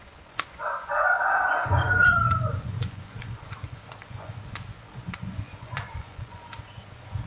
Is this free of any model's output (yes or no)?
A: no